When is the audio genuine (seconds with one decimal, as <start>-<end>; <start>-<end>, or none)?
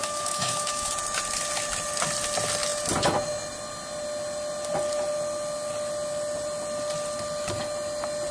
0.9-8.3